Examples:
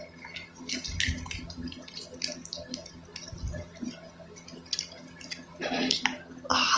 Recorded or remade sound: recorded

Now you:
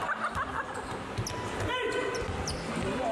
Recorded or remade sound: recorded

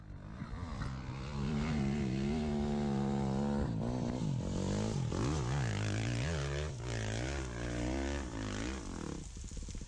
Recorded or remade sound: recorded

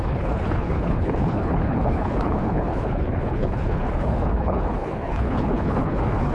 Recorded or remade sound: remade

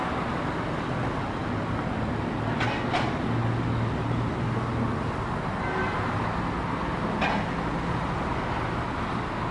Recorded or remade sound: recorded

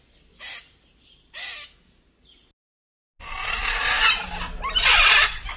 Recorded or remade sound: recorded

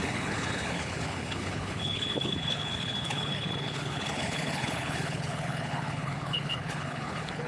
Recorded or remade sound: remade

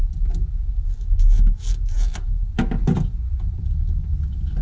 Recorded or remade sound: recorded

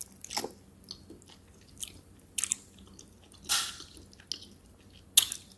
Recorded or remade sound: recorded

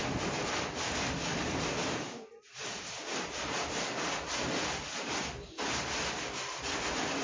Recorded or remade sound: recorded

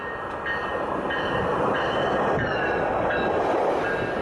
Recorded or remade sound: recorded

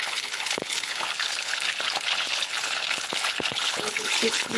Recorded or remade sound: remade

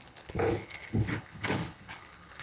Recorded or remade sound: remade